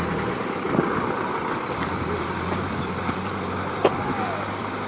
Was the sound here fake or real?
fake